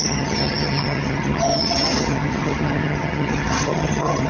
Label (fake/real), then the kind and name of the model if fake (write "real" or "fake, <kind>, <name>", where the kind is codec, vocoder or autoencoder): fake, vocoder, HiFi-GAN